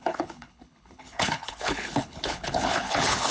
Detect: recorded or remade remade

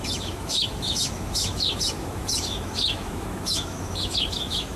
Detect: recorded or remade remade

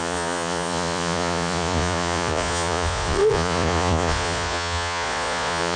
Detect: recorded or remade remade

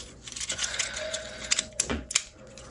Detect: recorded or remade remade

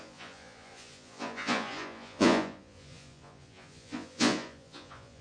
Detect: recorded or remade remade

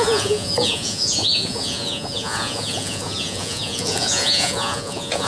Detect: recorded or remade remade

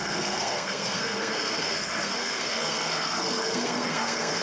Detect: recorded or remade remade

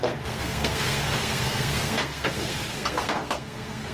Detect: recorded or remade remade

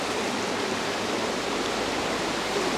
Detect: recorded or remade recorded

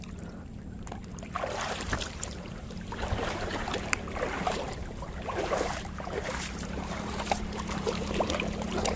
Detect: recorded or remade remade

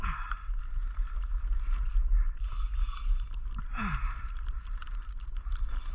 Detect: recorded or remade recorded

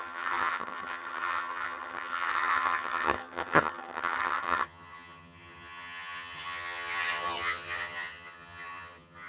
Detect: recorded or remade remade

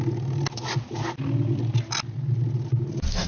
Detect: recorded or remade recorded